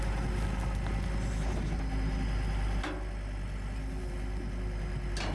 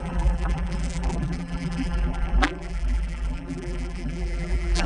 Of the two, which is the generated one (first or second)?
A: second